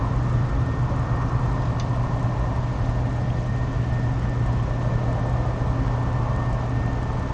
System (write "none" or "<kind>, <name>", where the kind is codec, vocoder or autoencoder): none